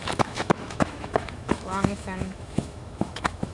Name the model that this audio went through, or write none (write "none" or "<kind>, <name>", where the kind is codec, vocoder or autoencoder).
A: autoencoder, DAC-VAE